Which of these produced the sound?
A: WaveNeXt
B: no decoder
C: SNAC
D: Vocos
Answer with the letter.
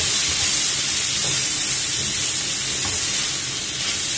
B